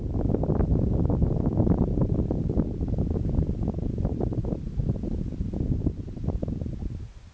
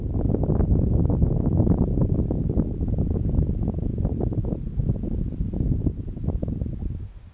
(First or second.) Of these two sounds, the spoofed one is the first